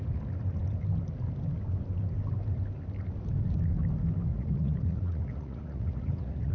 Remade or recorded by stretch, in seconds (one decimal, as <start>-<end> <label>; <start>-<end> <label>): 0.0-4.3 recorded; 4.3-6.5 remade